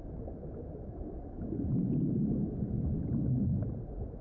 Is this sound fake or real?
real